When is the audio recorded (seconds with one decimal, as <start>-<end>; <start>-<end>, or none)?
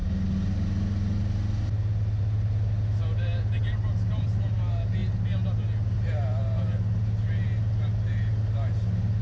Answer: 0.0-9.2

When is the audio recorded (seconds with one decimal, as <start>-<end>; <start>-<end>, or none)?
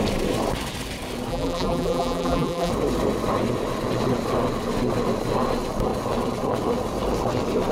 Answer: 0.0-1.3; 2.7-7.7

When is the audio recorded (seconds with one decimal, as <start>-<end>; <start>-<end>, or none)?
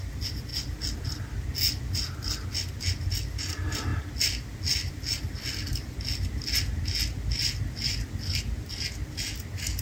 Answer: 0.0-9.8